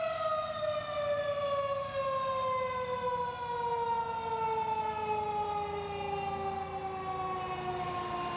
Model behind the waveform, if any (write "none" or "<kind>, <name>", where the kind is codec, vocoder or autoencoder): none